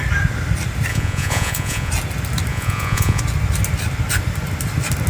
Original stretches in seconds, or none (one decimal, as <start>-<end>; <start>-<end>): 0.0-0.9; 1.9-2.5; 3.2-5.1